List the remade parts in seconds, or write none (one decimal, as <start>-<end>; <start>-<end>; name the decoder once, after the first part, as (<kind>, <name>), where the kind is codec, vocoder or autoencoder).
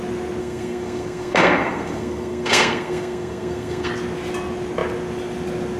0.4-3.9 (codec, SNAC)